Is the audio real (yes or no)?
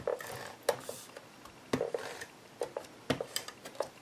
yes